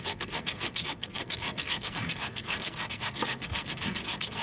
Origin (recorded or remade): remade